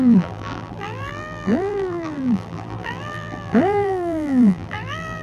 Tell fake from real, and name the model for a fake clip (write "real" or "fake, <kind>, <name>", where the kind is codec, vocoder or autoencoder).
fake, vocoder, BigVGAN v2